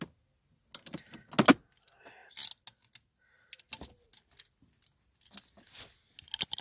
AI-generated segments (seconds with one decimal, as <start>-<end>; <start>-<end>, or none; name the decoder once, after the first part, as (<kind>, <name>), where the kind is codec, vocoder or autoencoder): none